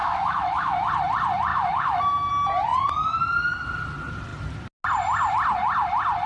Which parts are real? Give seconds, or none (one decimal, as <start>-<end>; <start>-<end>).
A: 0.9-1.5; 2.3-6.3